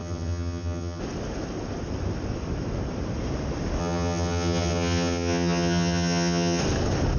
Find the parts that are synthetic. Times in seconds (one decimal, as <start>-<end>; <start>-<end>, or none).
0.0-1.0; 3.8-6.6